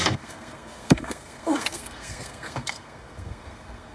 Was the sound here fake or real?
fake